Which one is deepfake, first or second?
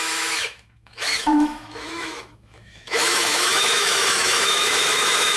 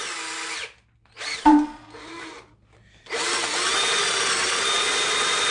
first